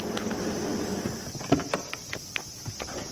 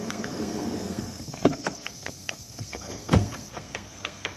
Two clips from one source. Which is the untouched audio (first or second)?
first